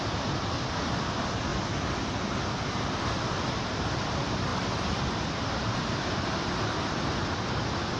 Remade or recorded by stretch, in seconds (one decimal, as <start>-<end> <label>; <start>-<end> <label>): 0.0-8.0 recorded